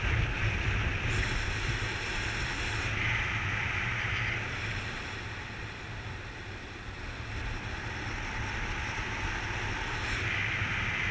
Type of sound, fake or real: real